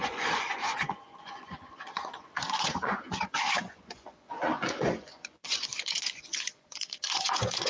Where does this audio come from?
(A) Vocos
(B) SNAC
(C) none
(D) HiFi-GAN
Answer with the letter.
A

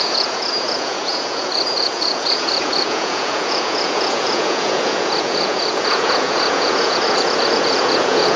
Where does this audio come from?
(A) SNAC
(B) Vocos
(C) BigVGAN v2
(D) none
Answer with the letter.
B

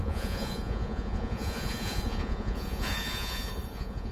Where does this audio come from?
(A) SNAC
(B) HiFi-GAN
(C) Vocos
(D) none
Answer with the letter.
C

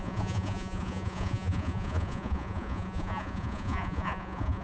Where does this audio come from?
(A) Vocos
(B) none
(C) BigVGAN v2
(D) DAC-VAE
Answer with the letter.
A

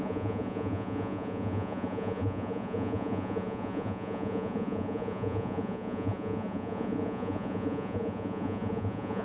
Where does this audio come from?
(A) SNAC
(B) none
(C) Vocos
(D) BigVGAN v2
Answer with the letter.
C